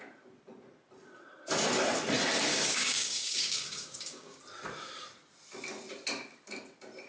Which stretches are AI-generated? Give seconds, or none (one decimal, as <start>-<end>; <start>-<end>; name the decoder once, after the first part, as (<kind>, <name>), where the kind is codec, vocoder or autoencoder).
2.5-4.4 (codec, DAC)